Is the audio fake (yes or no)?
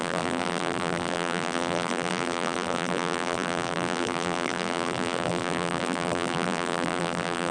yes